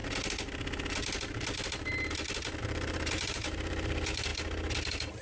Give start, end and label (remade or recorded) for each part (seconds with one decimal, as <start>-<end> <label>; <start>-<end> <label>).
0.0-2.6 recorded; 2.6-4.3 remade; 4.3-5.2 recorded